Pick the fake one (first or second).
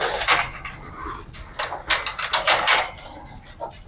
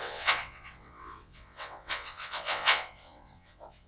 second